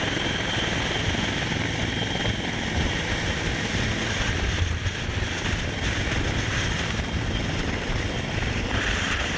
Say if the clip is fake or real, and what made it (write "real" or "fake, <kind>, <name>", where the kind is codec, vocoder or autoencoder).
real